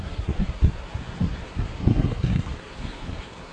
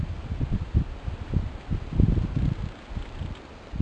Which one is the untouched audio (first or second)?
second